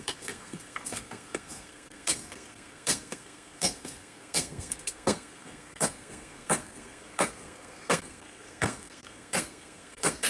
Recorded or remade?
remade